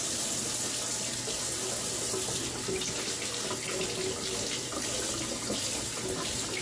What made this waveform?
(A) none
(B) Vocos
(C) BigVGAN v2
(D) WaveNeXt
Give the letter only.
A